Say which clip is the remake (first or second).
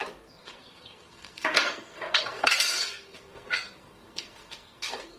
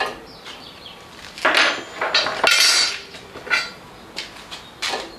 first